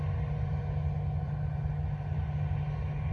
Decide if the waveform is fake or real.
real